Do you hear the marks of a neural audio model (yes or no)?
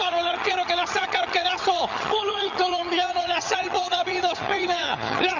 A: yes